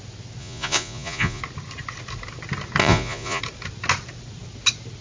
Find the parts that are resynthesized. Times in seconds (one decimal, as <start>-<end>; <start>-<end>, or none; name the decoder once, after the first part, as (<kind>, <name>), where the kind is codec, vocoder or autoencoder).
0.4-1.4 (vocoder, Vocos); 2.8-3.4